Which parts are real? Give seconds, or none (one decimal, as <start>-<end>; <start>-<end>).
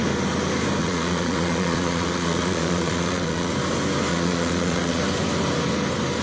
0.0-0.8; 3.5-4.1; 5.0-6.2